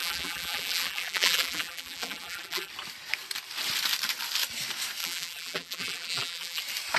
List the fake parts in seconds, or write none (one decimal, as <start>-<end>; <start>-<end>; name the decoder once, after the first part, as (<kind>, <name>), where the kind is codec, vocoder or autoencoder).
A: 0.0-2.7 (vocoder, BigVGAN v2); 5.0-6.6